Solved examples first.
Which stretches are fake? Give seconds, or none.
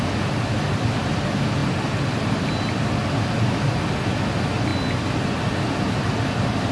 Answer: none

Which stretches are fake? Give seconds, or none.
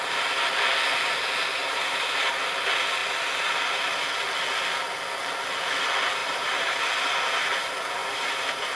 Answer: 1.6-2.3 (vocoder, BigVGAN v2); 6.2-6.8; 8.0-8.8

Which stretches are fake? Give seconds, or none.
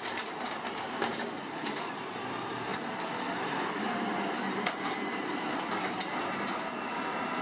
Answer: 0.0-7.4 (vocoder, BigVGAN v2)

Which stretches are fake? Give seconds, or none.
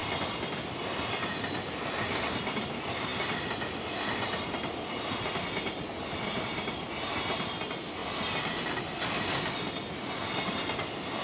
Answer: 0.0-0.8 (vocoder, BigVGAN v2); 8.0-8.8